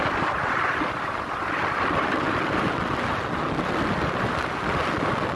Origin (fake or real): real